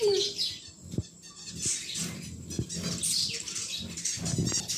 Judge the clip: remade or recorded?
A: recorded